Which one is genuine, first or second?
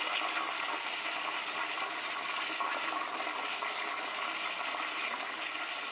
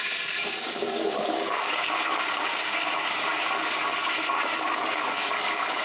first